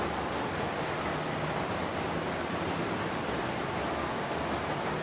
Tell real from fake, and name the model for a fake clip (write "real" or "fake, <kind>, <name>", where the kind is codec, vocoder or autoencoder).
real